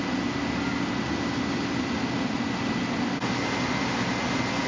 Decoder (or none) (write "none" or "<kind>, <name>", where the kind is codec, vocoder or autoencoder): none